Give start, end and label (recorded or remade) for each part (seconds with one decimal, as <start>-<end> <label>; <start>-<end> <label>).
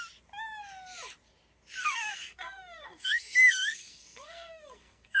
0.0-1.8 recorded; 1.8-5.2 remade